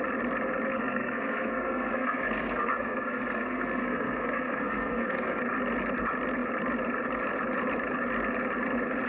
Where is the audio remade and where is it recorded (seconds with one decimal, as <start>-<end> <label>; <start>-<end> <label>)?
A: 0.0-0.7 recorded; 0.7-5.4 remade; 5.4-9.1 recorded